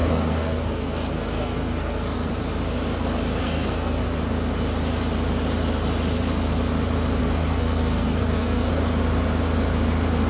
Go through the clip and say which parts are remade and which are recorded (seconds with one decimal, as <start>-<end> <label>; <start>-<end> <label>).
0.0-2.3 remade; 2.3-3.4 recorded; 3.4-4.2 remade; 4.2-7.2 recorded; 7.2-8.7 remade; 8.7-10.3 recorded